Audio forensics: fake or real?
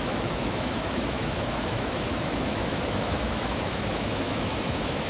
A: fake